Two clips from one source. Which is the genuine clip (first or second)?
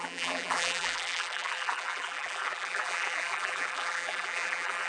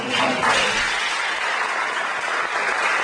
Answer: second